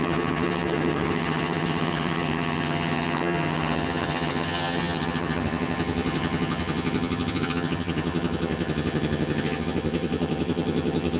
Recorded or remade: remade